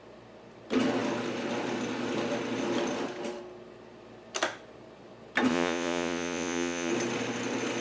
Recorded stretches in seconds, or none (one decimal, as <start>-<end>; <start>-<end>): 0.0-5.5; 6.9-7.8